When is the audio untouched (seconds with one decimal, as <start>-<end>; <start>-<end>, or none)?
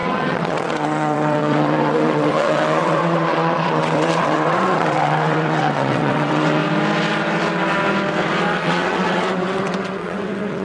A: 6.6-8.4